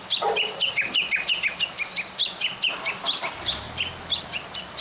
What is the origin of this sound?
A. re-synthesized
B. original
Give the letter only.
B